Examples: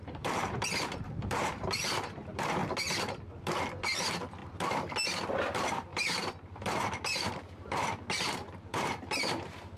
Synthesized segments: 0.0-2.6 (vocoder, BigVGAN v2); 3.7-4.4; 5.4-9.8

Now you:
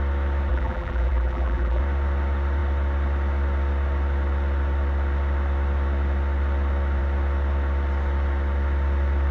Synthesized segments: 0.5-1.8 (vocoder, BigVGAN v2)

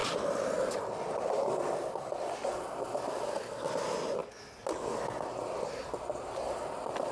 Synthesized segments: none

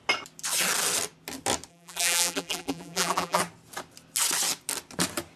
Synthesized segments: 1.7-3.4 (vocoder, BigVGAN v2)

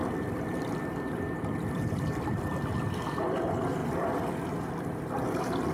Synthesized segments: 0.0-3.4 (vocoder, BigVGAN v2); 3.8-4.3